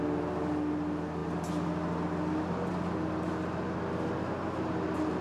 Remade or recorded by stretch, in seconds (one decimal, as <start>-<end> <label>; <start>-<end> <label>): 0.0-5.2 recorded